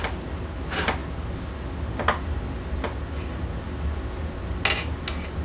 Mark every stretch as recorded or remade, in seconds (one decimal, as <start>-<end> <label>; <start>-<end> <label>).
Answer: 0.0-5.4 recorded